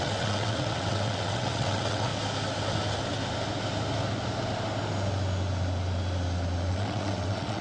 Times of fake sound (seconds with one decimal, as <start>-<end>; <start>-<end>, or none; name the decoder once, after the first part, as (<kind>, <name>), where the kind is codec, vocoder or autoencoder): 0.0-2.1 (vocoder, WaveNeXt); 6.7-7.6